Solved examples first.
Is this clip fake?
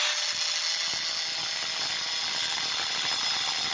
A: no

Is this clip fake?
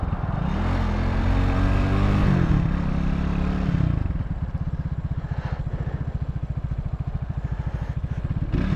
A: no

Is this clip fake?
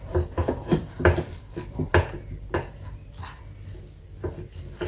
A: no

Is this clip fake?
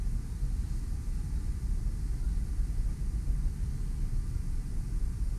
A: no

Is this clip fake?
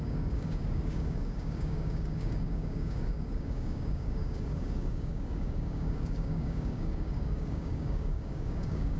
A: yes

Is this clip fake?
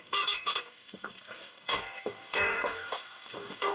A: yes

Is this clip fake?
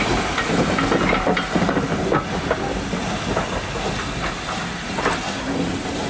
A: no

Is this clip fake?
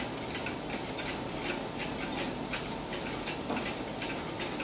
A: no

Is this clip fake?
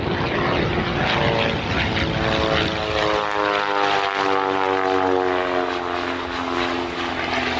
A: no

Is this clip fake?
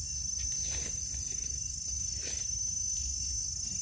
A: no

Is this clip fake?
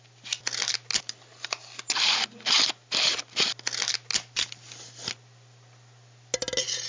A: no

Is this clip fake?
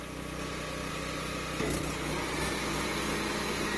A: no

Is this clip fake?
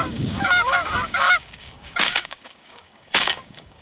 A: yes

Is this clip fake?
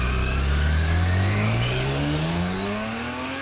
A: yes